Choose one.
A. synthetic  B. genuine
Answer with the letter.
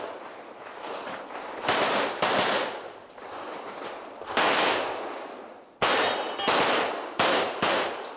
B